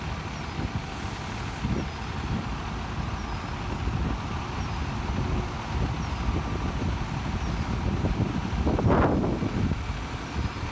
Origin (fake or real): real